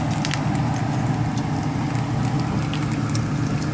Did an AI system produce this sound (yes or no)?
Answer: no